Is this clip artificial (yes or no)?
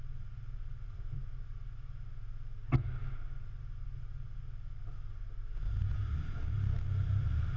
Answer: no